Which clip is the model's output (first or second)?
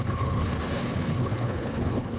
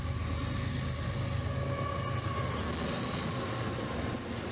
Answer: first